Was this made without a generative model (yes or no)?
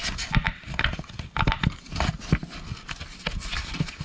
yes